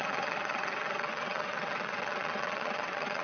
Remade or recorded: remade